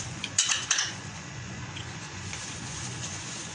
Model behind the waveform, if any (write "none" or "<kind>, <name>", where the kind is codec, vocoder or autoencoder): vocoder, Vocos